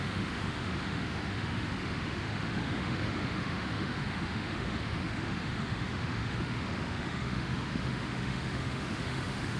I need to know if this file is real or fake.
fake